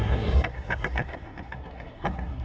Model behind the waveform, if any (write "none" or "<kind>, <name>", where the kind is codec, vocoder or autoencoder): codec, SNAC